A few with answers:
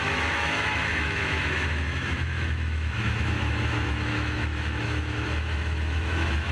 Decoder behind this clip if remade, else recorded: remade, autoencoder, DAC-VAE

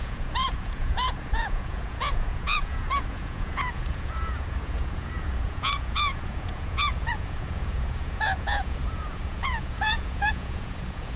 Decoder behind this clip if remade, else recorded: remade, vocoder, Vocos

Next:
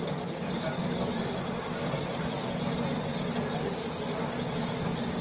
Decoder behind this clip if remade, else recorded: recorded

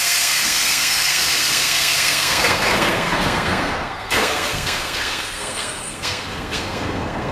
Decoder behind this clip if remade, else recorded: remade, codec, SNAC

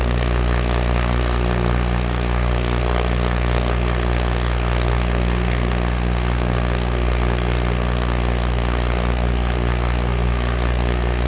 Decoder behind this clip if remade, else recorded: remade, codec, SNAC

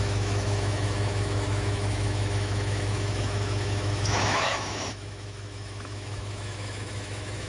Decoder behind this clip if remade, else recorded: remade, autoencoder, DAC-VAE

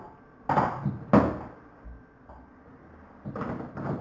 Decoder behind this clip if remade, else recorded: recorded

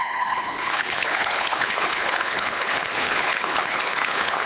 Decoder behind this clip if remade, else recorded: remade, codec, HILCodec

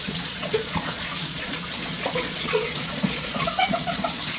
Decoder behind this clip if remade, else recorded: remade, vocoder, Vocos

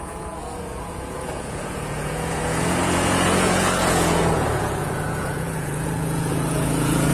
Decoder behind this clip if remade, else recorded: remade, vocoder, Vocos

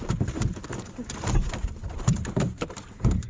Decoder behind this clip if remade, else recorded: remade, vocoder, BigVGAN v2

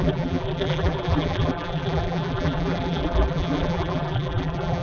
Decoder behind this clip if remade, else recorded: remade, vocoder, BigVGAN v2